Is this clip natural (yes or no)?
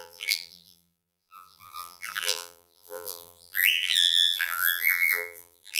no